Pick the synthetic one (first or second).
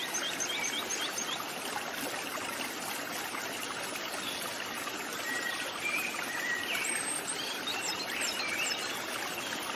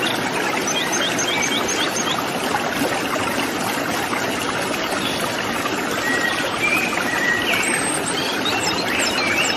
first